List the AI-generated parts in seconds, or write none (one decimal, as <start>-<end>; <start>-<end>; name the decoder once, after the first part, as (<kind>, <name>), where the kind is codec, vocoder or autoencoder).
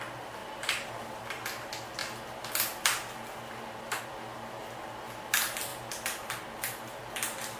none